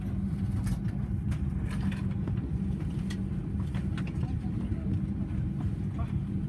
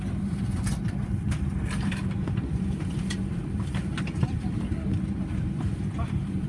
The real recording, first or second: first